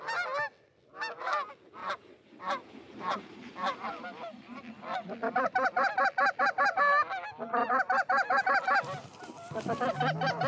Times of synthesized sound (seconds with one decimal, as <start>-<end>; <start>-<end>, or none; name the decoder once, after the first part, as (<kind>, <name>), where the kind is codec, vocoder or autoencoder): 1.8-4.6 (vocoder, BigVGAN v2); 7.6-8.4